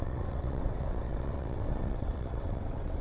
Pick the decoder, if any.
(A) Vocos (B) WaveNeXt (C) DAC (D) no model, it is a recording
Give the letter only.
B